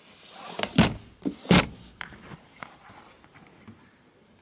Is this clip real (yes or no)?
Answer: yes